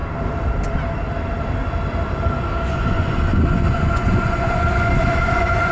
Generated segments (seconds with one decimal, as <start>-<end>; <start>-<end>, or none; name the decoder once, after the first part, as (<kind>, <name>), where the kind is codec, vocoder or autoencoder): 2.7-5.7 (vocoder, Vocos)